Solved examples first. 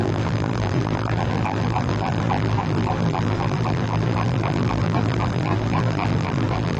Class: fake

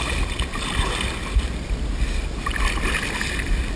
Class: real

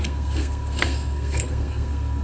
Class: fake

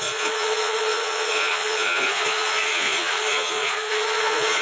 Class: fake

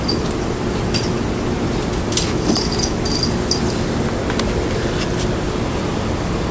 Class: real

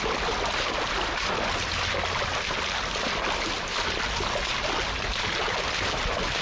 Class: real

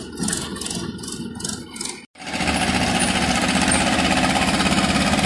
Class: real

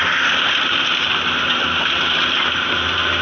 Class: real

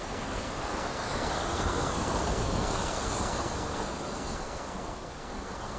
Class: fake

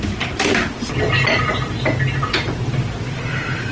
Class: fake